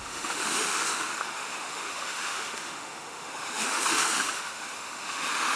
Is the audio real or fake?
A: fake